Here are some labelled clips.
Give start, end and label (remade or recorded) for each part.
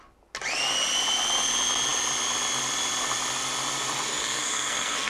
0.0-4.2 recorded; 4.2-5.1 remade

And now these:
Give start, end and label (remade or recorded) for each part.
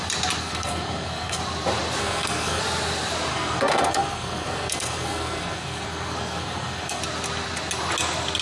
0.0-0.4 recorded; 0.4-1.4 remade; 1.4-2.0 recorded; 2.0-2.6 remade; 2.6-3.3 recorded; 3.3-7.0 remade; 7.0-8.4 recorded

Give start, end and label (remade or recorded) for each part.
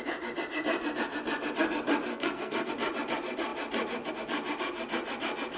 0.0-2.1 recorded; 2.1-2.7 remade; 2.7-5.6 recorded